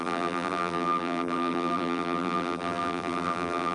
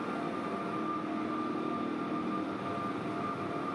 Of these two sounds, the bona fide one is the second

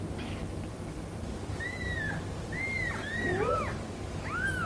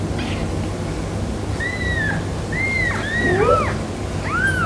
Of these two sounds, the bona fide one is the second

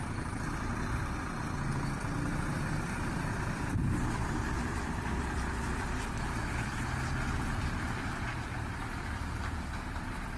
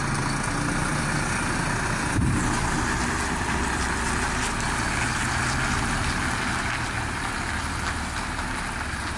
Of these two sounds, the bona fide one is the second